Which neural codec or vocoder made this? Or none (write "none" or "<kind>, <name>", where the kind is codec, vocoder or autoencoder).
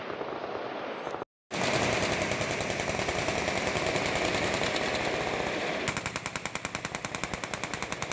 none